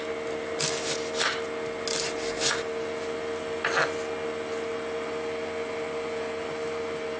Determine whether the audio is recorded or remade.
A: recorded